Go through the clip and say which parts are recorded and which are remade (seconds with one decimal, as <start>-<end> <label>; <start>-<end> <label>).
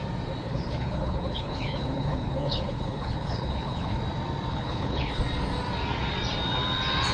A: 0.0-0.4 recorded; 0.4-4.0 remade; 4.0-4.5 recorded; 4.5-5.2 remade; 5.2-7.1 recorded